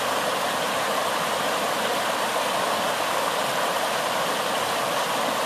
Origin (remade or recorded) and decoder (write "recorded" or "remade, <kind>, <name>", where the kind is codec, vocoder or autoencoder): remade, vocoder, BigVGAN v2